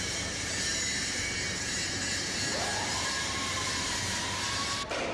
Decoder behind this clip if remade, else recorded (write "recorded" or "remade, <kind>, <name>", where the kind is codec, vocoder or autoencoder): recorded